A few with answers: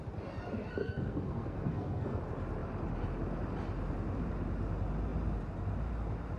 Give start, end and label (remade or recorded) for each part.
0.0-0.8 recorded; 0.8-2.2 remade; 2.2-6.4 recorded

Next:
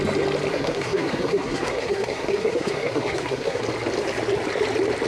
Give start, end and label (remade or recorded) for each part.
0.0-0.5 recorded; 0.5-3.6 remade; 3.6-5.1 recorded

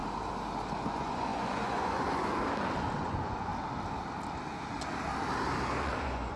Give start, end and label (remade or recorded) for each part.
0.0-0.8 recorded; 0.8-2.3 remade; 2.3-3.0 recorded; 3.0-3.5 remade; 3.5-5.8 recorded; 5.8-6.4 remade

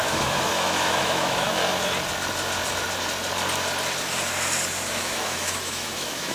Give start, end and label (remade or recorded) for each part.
0.0-1.6 remade; 1.6-4.9 recorded; 4.9-6.3 remade

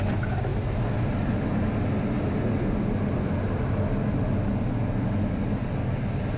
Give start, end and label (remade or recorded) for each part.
0.0-6.4 recorded

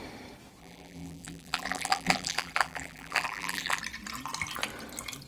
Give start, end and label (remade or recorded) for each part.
0.0-0.6 recorded; 0.6-3.8 remade; 3.8-5.3 recorded